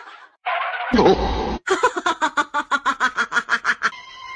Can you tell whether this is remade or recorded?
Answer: remade